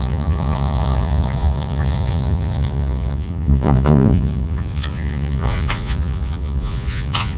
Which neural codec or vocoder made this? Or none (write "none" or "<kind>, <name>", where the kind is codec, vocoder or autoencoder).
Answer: vocoder, Vocos